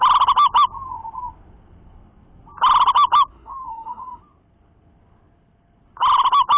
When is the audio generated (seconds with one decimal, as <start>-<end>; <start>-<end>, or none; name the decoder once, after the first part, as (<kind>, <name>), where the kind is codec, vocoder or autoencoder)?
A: 3.3-4.2 (autoencoder, DAC-VAE)